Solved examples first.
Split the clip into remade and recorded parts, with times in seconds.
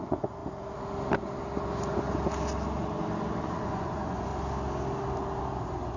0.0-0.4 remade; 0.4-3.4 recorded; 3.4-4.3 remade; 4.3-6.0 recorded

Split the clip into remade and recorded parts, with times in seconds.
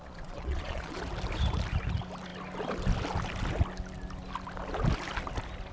0.0-1.0 remade; 1.0-5.7 recorded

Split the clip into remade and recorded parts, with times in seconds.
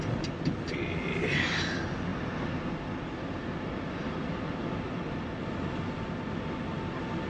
0.0-7.3 recorded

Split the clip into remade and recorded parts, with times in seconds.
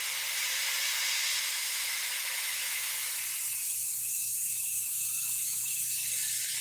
0.0-1.5 recorded; 1.5-3.2 remade; 3.2-3.6 recorded; 3.6-6.1 remade; 6.1-6.6 recorded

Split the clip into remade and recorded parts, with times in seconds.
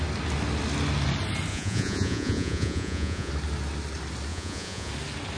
0.0-1.5 recorded; 1.5-3.3 remade; 3.3-4.3 recorded; 4.3-4.9 remade; 4.9-5.4 recorded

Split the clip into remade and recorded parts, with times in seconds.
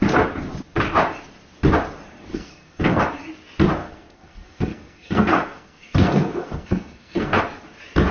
0.0-2.3 recorded; 2.3-3.0 remade; 3.0-3.8 recorded; 3.8-7.4 remade; 7.4-8.1 recorded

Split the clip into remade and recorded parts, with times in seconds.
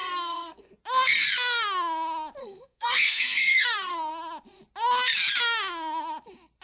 0.0-0.6 remade; 0.6-2.4 recorded; 2.4-4.1 remade; 4.1-6.6 recorded